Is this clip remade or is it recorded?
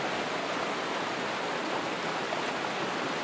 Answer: recorded